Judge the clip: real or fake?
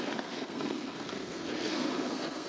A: fake